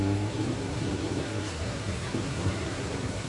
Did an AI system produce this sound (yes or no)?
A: yes